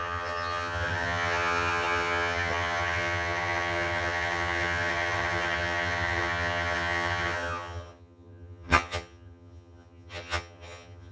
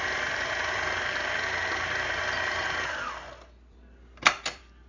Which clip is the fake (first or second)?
first